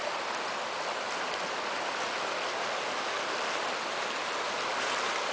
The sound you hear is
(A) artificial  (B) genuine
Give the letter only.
B